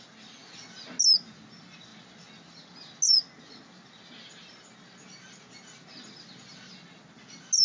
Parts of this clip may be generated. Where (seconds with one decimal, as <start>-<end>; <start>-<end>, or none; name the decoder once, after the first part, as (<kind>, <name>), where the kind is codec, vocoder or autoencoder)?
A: none